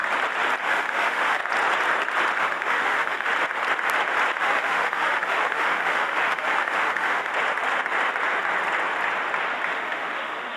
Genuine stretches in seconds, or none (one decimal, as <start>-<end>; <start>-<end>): 0.0-0.6; 1.4-2.4; 3.3-4.4; 7.3-9.7